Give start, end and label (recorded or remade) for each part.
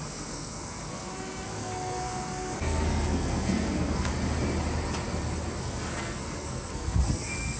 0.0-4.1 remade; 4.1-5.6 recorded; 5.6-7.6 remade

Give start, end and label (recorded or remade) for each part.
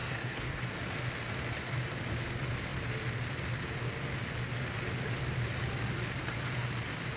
0.0-0.6 remade; 0.6-7.2 recorded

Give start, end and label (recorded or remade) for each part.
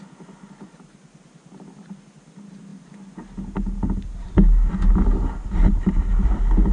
0.0-6.7 recorded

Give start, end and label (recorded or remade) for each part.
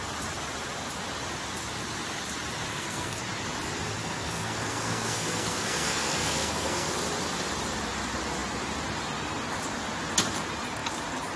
0.0-2.7 recorded; 2.7-3.2 remade; 3.2-4.0 recorded; 4.0-6.9 remade; 6.9-11.4 recorded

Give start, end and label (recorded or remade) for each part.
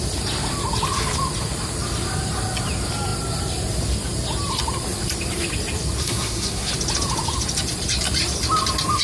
0.0-6.0 recorded; 6.0-6.7 remade; 6.7-9.0 recorded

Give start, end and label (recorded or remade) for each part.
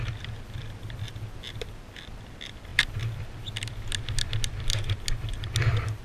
0.0-6.0 recorded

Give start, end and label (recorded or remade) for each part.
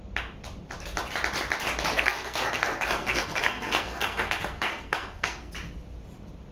0.0-1.9 recorded; 1.9-5.5 remade; 5.5-6.5 recorded